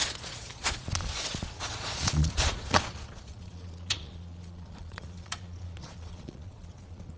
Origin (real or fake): fake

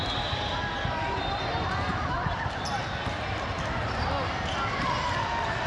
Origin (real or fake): real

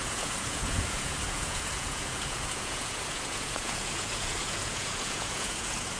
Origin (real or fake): fake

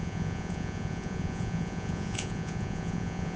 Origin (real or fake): fake